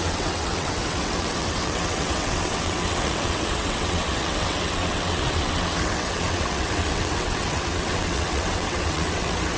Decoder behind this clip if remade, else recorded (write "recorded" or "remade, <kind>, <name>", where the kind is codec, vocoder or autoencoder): remade, vocoder, WaveNeXt